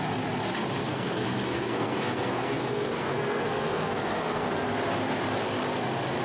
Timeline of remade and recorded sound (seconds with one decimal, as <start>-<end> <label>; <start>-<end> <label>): 0.0-0.8 recorded; 0.8-4.5 remade; 4.5-6.2 recorded